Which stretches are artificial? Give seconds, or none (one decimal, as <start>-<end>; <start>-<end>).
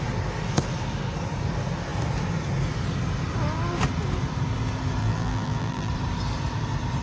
5.0-5.9